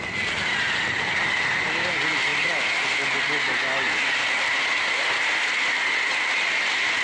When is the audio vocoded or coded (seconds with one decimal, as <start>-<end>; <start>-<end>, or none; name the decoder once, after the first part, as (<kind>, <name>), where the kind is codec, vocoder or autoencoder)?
none